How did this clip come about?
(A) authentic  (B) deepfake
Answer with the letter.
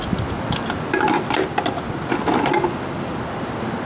A